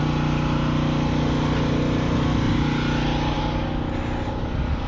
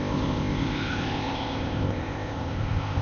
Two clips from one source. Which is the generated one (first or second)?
second